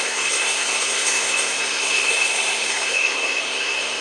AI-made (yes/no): yes